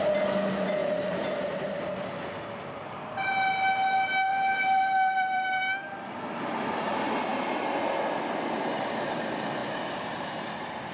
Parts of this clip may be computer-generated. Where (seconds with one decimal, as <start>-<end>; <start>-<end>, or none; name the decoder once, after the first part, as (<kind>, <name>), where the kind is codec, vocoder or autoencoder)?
0.8-1.7 (vocoder, BigVGAN v2); 4.3-6.2; 9.6-10.4